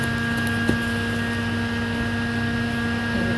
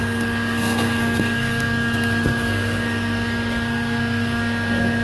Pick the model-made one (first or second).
second